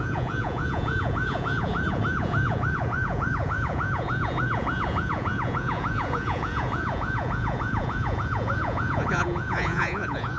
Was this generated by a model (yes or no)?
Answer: yes